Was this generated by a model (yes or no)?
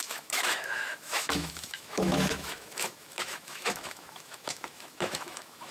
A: yes